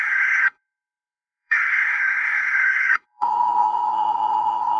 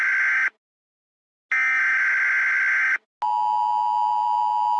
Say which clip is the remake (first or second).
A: first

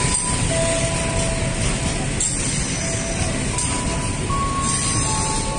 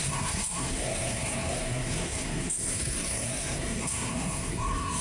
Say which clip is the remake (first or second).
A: second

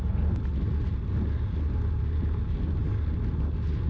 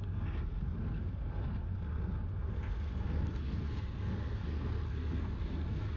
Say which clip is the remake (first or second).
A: second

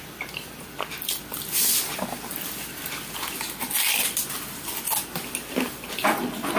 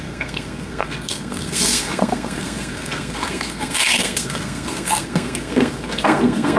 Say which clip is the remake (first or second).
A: second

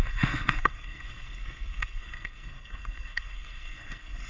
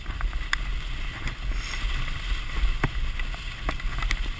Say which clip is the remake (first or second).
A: first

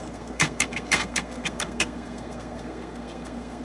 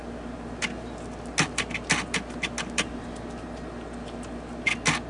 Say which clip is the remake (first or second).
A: first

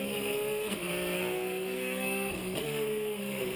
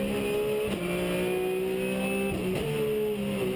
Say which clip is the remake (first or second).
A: first